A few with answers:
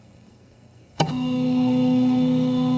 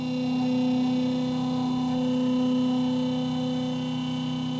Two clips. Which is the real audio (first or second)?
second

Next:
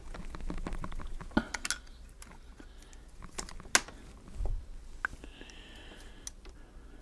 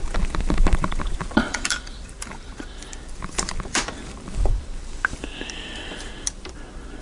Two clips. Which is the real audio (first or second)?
first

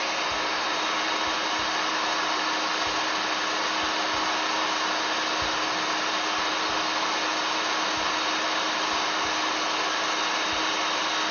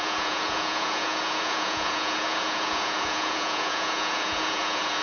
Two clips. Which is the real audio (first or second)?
first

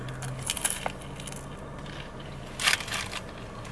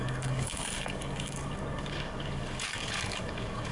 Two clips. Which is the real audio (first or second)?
first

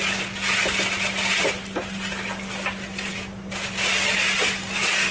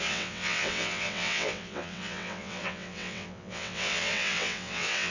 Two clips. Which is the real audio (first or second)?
first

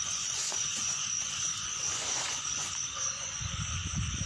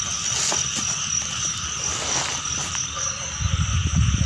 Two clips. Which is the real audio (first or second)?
second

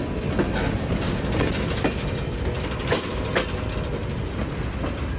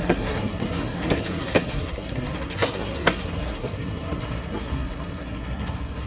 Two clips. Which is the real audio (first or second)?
first